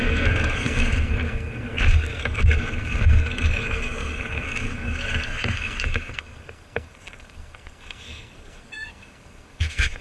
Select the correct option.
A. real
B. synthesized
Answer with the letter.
B